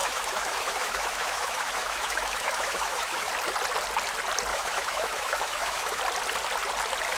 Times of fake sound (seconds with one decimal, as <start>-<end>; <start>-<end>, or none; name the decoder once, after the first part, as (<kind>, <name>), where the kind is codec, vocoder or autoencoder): 0.0-3.3 (autoencoder, DAC-VAE); 4.5-6.0